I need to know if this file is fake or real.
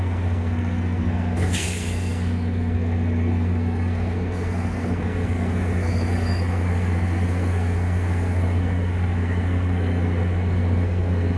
fake